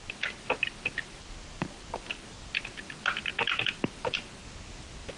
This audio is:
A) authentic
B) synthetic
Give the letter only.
A